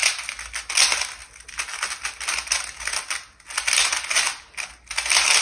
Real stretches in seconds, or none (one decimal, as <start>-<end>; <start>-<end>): 0.0-5.4